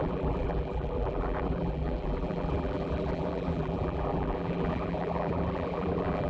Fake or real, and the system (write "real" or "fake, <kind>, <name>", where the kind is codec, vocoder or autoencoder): fake, vocoder, BigVGAN v2